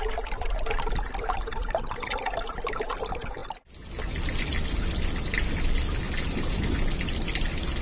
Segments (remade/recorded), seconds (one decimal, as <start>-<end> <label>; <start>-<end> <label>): 0.0-7.8 recorded

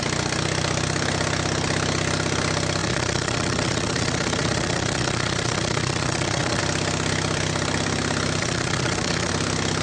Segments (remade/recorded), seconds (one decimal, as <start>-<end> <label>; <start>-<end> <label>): 0.0-2.8 recorded; 2.8-6.6 remade; 6.6-8.4 recorded; 8.4-9.3 remade; 9.3-9.8 recorded